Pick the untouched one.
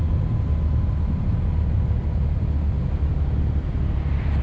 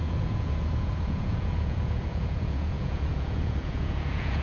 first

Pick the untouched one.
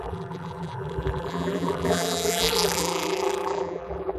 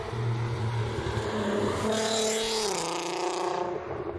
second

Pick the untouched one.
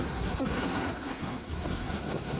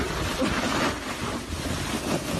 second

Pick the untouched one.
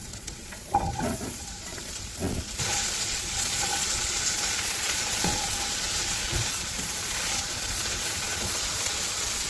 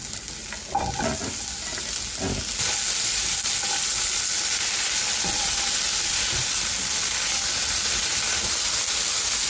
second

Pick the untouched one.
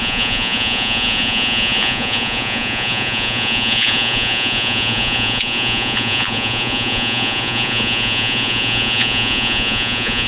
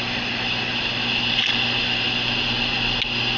second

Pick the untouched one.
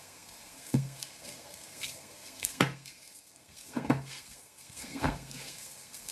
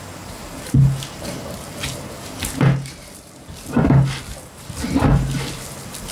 second